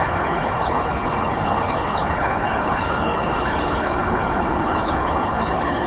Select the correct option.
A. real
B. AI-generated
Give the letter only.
B